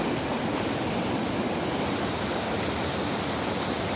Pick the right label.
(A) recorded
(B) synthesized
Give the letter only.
A